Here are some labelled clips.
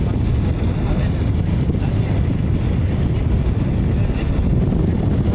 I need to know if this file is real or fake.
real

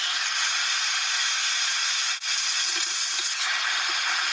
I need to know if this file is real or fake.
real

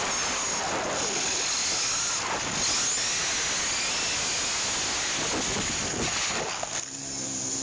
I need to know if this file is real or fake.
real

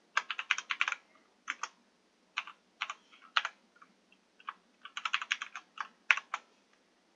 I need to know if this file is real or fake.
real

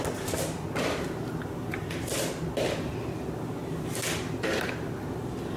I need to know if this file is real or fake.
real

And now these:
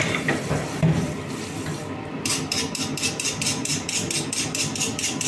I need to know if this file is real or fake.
fake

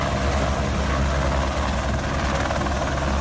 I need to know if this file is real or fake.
real